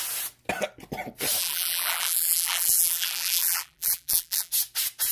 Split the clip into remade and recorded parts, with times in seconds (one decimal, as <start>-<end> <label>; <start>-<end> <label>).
0.0-1.4 recorded; 1.4-4.5 remade; 4.5-5.1 recorded